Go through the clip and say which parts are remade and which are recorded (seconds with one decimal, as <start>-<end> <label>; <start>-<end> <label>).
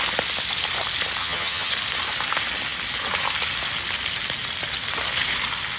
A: 0.0-1.2 recorded; 1.2-1.7 remade; 1.7-5.8 recorded